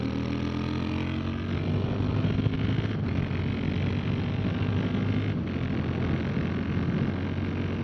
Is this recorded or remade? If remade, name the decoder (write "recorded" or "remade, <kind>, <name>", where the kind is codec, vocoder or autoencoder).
recorded